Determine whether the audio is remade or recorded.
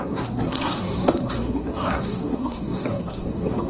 remade